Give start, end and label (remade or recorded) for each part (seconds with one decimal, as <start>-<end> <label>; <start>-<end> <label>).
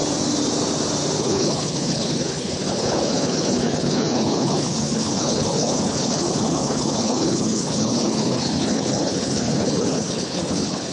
0.0-1.2 recorded; 1.2-10.9 remade